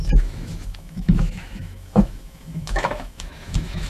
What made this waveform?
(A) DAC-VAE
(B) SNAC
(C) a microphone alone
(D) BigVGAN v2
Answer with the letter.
A